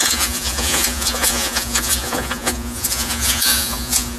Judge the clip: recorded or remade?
remade